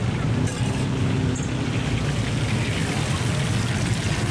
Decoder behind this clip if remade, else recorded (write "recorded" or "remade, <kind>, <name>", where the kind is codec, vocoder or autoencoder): recorded